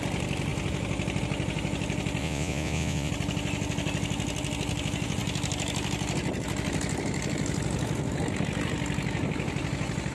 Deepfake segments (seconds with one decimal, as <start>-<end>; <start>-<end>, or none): 2.2-3.1